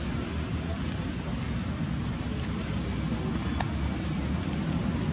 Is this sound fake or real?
real